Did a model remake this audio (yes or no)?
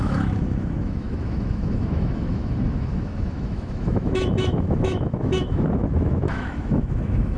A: yes